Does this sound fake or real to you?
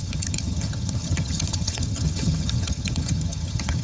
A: fake